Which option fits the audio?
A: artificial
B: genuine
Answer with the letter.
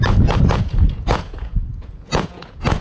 A